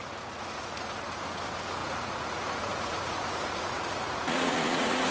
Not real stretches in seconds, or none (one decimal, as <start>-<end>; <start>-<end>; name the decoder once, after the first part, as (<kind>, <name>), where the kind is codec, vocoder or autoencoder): 0.0-1.1 (vocoder, Vocos); 1.8-5.1